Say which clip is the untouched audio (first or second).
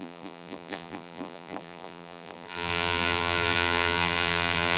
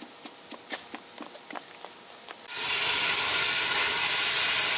second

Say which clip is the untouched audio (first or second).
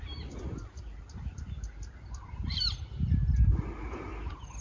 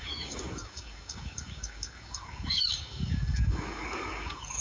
first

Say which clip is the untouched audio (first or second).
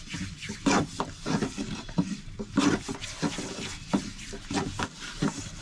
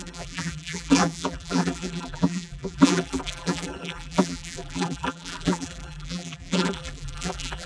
first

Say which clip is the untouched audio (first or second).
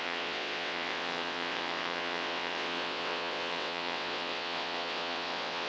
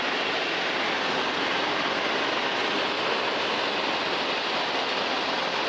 second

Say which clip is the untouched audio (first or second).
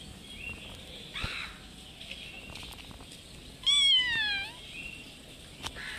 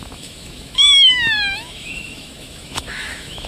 first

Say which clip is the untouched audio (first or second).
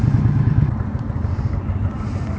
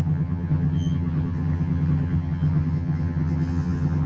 first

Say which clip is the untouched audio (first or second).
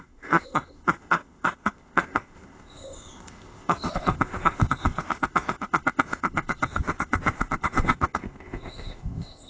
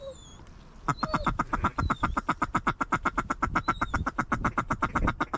second